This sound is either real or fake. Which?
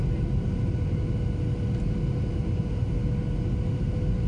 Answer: real